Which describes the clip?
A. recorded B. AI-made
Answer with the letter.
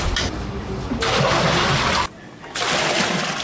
A